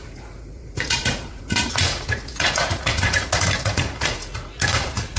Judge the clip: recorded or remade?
remade